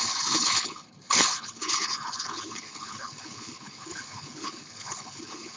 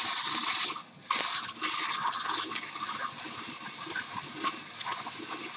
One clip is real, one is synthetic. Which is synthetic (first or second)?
first